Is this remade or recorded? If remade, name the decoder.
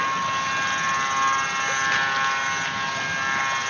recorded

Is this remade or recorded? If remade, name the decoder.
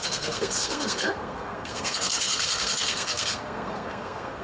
remade, codec, SNAC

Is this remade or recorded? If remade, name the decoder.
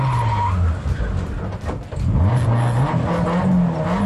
recorded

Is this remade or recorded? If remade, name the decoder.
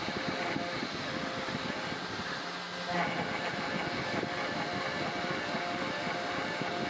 recorded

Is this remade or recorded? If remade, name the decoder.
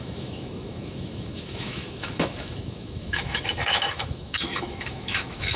remade, autoencoder, DAC-VAE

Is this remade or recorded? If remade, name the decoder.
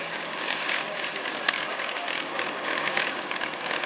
remade, codec, DAC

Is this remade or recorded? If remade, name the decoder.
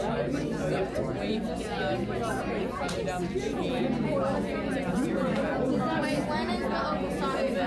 recorded